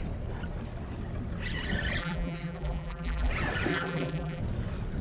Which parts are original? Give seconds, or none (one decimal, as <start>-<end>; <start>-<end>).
0.0-2.0; 3.3-3.7; 4.4-5.0